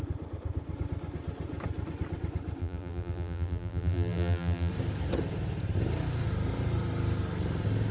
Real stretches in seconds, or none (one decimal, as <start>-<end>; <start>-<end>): 0.0-2.6; 4.7-7.9